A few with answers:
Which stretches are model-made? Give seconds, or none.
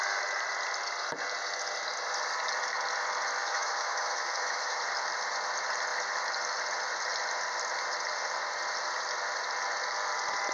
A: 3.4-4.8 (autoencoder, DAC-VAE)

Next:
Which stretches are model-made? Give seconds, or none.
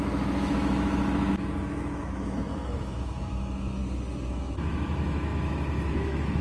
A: 0.0-3.8 (autoencoder, DAC-VAE); 4.3-6.4